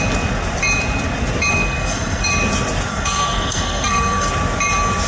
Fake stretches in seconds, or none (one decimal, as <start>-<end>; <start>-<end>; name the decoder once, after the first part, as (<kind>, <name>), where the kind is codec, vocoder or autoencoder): 1.5-2.3 (codec, SNAC); 2.9-4.3